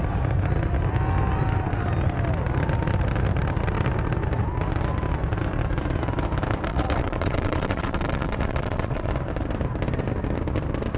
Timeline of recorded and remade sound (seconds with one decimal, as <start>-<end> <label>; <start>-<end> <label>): 0.0-6.7 recorded; 6.7-9.1 remade; 9.1-11.0 recorded